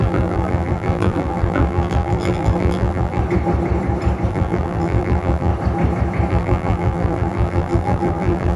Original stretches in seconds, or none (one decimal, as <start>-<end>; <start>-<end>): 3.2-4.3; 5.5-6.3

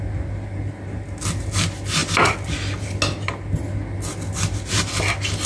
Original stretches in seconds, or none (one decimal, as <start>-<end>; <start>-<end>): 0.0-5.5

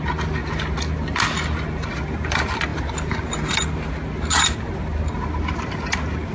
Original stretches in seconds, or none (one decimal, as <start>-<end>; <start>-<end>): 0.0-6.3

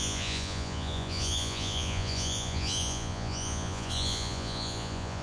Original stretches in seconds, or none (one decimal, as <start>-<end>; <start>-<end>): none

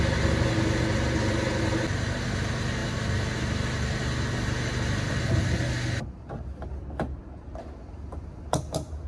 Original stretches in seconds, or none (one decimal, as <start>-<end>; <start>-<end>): 0.0-9.1

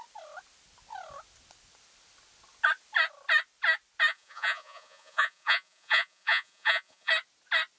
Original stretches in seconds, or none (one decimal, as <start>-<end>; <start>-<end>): 0.0-4.1; 7.1-7.8

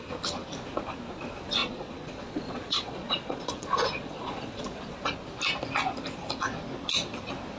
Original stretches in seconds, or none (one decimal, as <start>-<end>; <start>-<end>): 0.0-1.6; 4.8-7.6